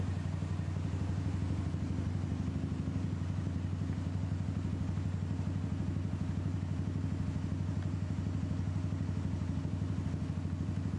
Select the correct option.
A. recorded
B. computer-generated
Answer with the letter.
A